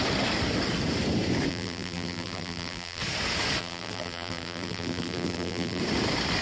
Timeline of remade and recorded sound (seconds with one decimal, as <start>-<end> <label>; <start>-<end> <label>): 0.0-1.5 recorded; 1.5-3.0 remade; 3.0-3.6 recorded; 3.6-5.8 remade; 5.8-6.4 recorded